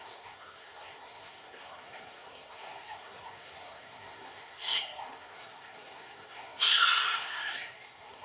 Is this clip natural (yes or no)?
no